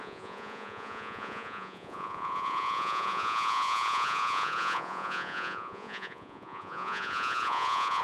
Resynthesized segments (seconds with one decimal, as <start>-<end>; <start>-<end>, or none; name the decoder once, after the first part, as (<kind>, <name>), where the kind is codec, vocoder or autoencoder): 0.0-8.0 (vocoder, Vocos)